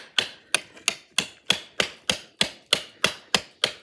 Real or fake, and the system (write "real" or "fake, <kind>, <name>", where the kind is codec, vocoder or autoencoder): real